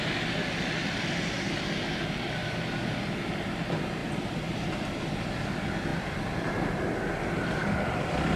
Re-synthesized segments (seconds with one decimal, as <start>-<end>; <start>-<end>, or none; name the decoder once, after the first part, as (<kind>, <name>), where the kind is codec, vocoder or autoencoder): 4.0-5.0 (vocoder, BigVGAN v2); 5.9-6.8